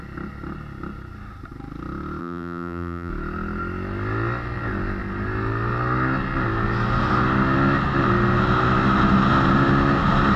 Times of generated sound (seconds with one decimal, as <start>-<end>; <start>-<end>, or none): 2.2-3.1